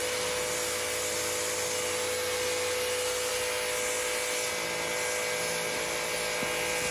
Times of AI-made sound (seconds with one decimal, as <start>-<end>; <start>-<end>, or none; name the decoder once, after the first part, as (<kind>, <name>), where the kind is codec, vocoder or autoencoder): none